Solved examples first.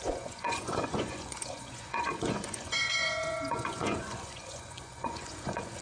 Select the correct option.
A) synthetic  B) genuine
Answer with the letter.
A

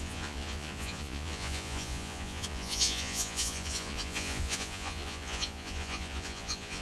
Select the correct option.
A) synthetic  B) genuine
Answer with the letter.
A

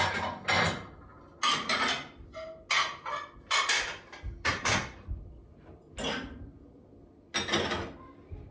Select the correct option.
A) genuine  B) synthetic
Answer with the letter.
A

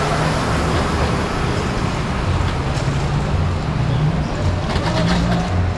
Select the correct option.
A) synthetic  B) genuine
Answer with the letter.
B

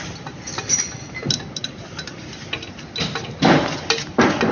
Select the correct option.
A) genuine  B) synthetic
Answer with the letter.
A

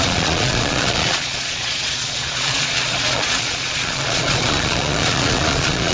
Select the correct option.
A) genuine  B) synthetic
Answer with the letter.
B